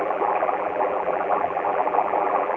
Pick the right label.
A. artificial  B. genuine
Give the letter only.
A